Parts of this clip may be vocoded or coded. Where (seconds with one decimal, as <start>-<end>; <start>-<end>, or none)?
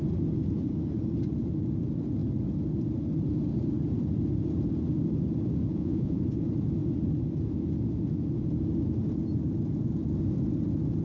5.7-6.2